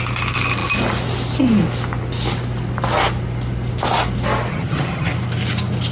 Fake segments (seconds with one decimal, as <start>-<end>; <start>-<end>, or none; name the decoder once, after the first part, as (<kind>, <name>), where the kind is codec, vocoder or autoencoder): 4.5-5.1 (vocoder, HiFi-GAN)